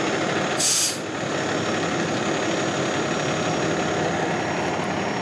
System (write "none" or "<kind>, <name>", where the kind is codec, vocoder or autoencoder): none